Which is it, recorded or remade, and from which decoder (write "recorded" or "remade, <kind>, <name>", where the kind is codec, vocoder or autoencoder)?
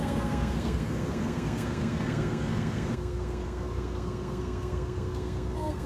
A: remade, codec, SNAC